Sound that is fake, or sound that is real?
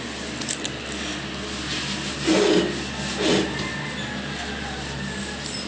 real